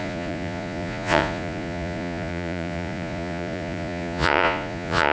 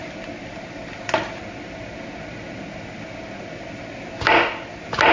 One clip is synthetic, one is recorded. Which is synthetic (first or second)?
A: first